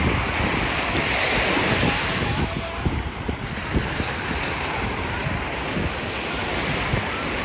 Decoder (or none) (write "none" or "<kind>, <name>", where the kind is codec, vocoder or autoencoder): none